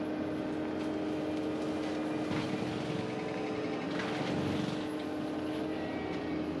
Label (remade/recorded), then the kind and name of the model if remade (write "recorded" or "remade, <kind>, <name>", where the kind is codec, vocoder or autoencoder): recorded